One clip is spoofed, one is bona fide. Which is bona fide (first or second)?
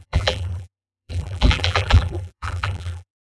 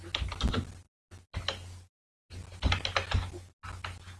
second